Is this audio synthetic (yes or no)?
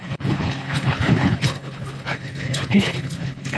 yes